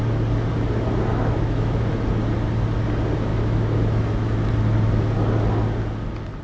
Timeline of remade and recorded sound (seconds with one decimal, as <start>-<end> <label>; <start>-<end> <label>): 0.0-1.1 recorded; 1.1-1.8 remade; 1.8-3.3 recorded; 3.3-4.5 remade; 4.5-6.4 recorded